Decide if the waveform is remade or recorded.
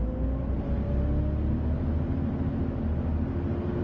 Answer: recorded